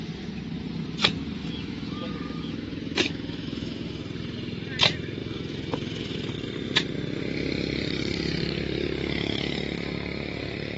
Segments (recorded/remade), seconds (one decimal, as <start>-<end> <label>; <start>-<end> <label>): 0.0-1.4 recorded; 1.4-4.0 remade; 4.0-5.2 recorded; 5.2-6.3 remade; 6.3-9.0 recorded; 9.0-9.6 remade; 9.6-10.8 recorded